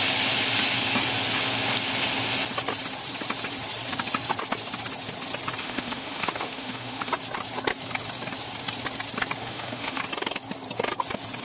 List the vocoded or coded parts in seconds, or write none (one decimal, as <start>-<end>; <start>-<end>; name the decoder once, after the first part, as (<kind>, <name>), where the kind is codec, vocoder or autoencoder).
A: 5.6-7.1 (autoencoder, DAC-VAE); 9.4-10.0